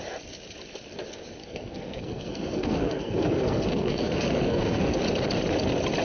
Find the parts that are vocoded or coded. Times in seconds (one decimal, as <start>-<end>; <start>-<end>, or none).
1.4-5.0

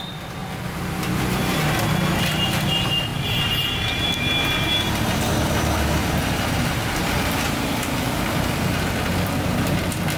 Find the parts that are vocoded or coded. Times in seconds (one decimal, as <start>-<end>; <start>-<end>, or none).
0.0-0.4; 2.6-10.2

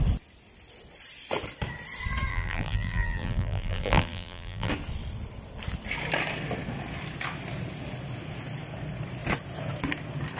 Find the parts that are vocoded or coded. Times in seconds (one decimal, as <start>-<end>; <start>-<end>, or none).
2.3-4.7

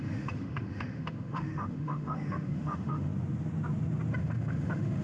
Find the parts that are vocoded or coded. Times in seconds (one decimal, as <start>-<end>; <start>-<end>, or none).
0.0-3.1; 4.2-5.0

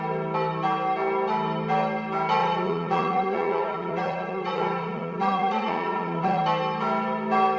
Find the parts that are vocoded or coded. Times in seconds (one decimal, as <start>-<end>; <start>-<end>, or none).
2.4-6.4